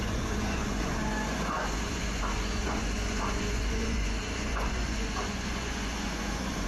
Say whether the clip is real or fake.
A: fake